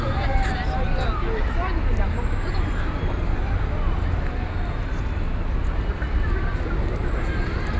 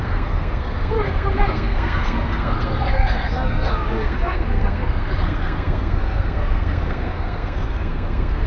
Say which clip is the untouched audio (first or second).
first